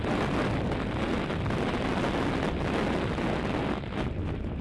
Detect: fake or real real